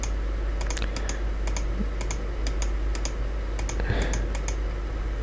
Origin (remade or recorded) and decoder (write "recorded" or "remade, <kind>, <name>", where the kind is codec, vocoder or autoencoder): recorded